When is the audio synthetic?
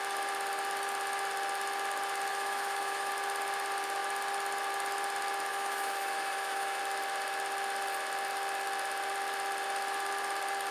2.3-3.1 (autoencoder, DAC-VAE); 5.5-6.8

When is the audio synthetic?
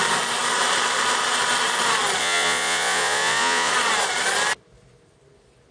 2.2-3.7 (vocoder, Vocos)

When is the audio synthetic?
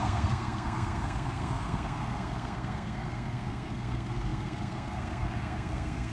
0.0-6.1 (codec, SNAC)